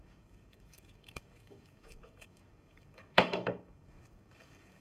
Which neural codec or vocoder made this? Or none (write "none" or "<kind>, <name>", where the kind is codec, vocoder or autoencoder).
codec, DAC